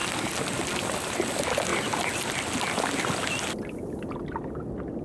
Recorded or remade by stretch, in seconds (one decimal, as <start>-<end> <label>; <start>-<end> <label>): 0.0-5.0 recorded